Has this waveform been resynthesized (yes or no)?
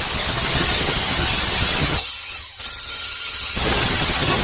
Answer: yes